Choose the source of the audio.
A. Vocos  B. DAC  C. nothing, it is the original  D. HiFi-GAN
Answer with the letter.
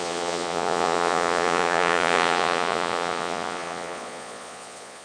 A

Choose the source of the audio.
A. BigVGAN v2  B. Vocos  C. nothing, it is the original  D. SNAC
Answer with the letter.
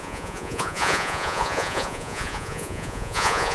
B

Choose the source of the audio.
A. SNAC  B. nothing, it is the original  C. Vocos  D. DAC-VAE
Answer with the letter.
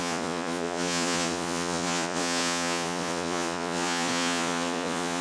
C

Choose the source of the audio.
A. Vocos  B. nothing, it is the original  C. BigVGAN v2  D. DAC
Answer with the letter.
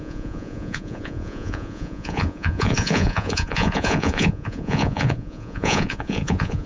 A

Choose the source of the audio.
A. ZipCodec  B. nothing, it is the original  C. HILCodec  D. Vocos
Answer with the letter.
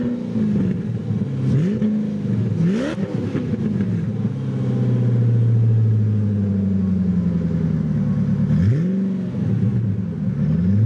B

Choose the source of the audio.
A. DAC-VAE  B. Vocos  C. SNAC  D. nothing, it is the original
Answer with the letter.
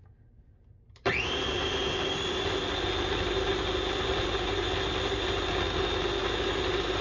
D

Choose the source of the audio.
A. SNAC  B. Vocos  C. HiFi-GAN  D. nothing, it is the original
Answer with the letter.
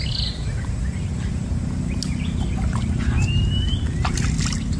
D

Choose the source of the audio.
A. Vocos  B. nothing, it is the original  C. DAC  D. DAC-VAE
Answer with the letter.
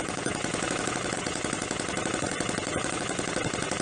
A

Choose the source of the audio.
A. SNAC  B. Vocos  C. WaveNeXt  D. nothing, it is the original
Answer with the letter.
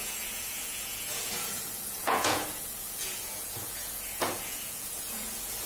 B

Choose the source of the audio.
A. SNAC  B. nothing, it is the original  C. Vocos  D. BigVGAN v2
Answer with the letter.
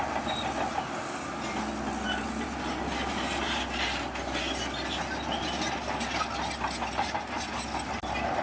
B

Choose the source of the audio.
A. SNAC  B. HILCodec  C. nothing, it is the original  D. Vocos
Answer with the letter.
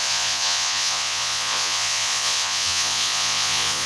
D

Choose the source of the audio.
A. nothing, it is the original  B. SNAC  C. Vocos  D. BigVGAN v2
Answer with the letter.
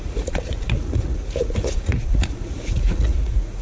C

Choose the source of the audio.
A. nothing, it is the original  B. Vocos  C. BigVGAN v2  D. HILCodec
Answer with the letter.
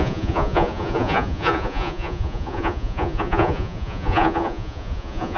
B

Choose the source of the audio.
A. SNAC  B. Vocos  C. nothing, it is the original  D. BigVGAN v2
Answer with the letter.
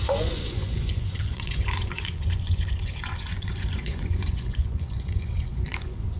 B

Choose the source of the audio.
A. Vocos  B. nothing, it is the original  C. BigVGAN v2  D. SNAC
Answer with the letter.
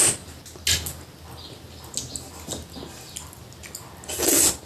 B